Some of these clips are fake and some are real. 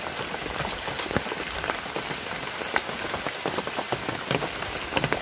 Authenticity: real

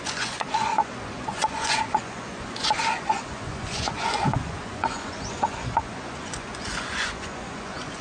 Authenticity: fake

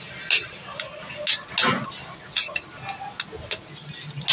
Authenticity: real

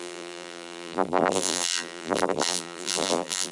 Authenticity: fake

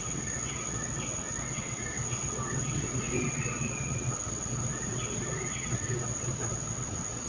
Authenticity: fake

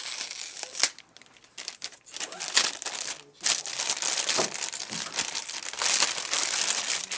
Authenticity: real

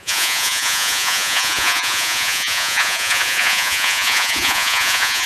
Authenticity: fake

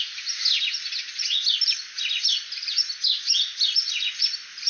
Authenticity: real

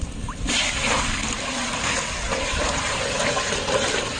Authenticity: real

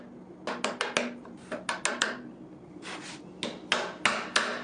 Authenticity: real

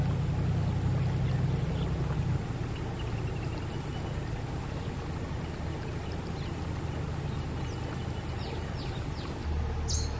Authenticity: real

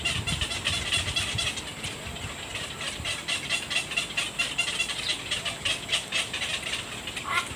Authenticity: fake